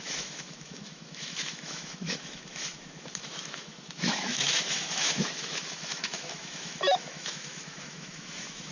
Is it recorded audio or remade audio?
remade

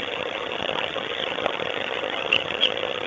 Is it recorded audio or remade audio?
remade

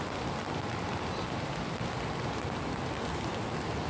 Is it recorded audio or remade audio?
recorded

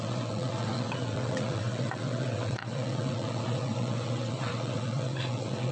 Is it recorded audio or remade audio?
remade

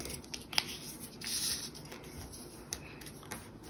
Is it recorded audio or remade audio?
recorded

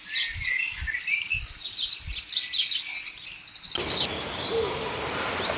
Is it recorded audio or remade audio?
recorded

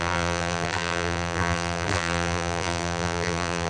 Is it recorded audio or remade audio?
remade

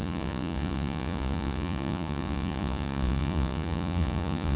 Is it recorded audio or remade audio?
remade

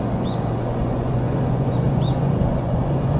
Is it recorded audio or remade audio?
remade